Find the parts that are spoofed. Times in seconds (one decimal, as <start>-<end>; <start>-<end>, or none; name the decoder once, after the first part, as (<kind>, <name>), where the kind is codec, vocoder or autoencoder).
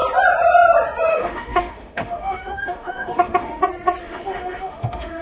1.1-3.6 (autoencoder, DAC-VAE); 4.0-5.2